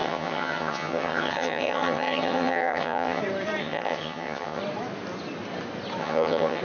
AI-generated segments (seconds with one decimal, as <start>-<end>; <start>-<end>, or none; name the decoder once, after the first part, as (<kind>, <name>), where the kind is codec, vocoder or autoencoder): 0.0-3.2 (vocoder, HiFi-GAN); 3.6-4.6; 6.0-6.6